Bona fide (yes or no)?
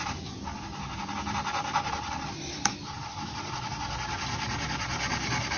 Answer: yes